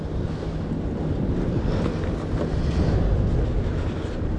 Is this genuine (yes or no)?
yes